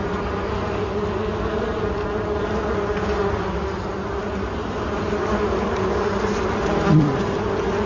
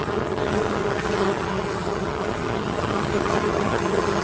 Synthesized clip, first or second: second